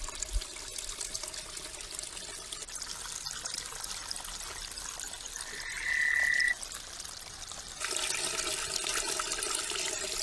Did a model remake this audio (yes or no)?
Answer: no